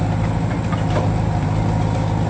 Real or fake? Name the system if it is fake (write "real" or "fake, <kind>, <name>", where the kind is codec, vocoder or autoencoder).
real